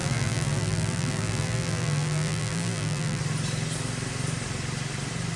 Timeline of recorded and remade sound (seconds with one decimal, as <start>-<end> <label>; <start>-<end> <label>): 0.0-3.2 remade; 3.2-5.4 recorded